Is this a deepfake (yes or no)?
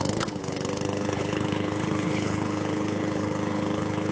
yes